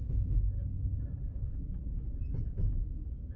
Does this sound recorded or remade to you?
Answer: recorded